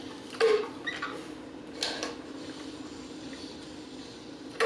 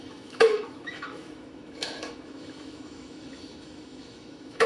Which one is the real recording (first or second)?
first